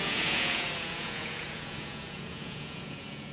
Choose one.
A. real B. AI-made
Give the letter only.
B